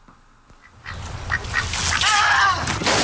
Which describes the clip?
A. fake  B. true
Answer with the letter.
B